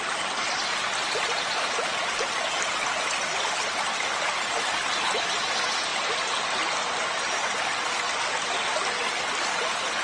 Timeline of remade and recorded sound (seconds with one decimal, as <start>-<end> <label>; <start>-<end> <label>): 0.0-10.0 recorded